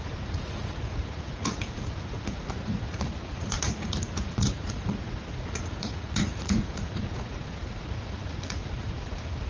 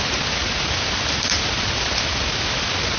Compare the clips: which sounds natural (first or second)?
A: second